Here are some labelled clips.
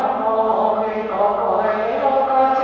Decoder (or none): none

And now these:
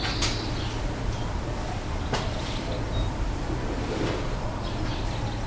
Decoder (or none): none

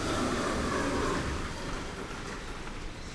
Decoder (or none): none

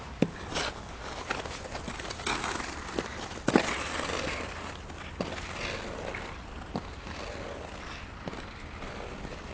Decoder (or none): none